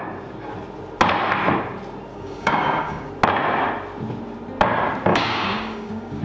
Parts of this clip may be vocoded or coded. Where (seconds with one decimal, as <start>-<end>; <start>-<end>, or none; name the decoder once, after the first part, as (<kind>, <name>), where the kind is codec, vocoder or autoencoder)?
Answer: 2.1-3.1 (codec, DAC); 5.1-6.2